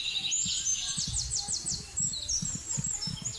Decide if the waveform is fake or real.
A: real